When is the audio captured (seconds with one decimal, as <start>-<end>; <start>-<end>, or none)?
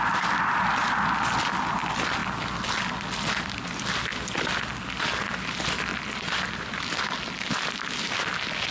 0.0-8.7